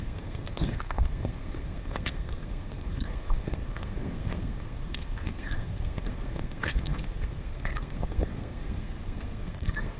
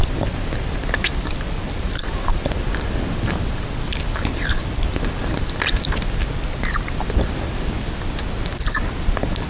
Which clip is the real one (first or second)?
second